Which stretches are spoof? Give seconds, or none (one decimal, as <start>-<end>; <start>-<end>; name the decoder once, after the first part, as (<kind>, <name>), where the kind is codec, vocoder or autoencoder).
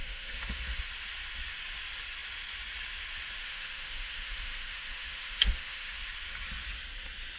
0.0-0.8 (autoencoder, DAC-VAE); 3.4-6.0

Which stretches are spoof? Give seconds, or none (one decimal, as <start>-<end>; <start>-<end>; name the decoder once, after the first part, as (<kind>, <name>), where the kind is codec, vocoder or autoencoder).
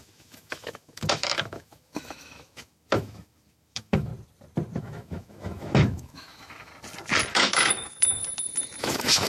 0.0-4.1 (autoencoder, DAC-VAE); 4.8-6.7; 7.3-8.2; 8.8-9.3